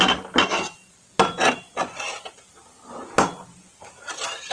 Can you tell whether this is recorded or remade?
recorded